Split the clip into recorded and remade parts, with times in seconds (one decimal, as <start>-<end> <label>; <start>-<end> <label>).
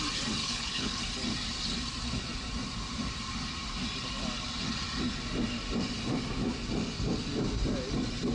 0.0-0.4 recorded; 0.4-1.0 remade; 1.0-8.3 recorded